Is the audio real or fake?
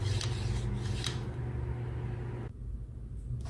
real